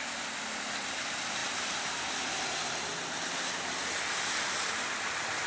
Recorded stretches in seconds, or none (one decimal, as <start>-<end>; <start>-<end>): 0.0-5.5

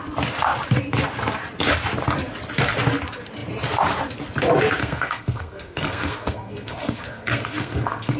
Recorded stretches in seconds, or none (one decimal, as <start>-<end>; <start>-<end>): 0.0-4.8

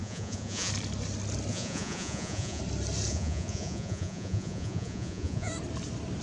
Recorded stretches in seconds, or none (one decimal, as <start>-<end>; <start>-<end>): 0.7-1.5; 2.6-3.1; 5.5-6.2

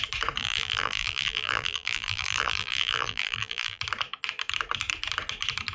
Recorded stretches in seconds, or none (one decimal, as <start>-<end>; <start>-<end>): 0.0-0.4; 3.8-5.7